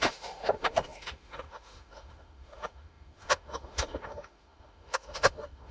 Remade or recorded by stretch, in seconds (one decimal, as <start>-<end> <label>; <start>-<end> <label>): 0.0-5.7 remade